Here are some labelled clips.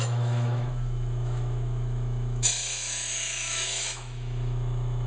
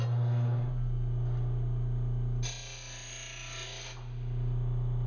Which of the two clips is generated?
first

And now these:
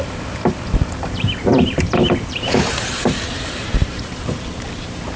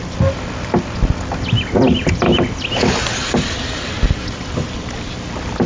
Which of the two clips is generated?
first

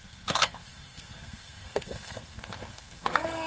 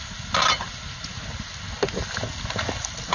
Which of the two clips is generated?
first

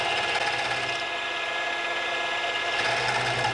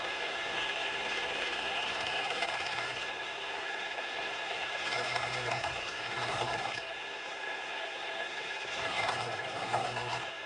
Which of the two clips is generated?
second